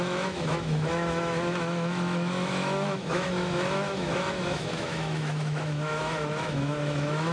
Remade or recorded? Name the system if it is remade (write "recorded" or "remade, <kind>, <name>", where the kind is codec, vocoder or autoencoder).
remade, autoencoder, DAC-VAE